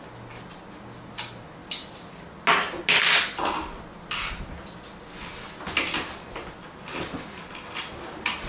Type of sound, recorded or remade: recorded